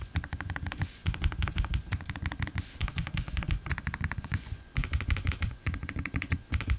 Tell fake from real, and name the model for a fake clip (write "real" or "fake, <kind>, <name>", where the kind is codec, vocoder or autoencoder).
fake, vocoder, Vocos